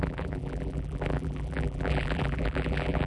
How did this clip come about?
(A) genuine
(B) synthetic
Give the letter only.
B